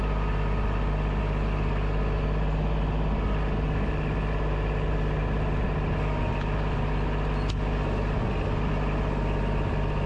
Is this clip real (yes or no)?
yes